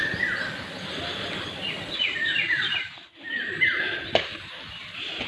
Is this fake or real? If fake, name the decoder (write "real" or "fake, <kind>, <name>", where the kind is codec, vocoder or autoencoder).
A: real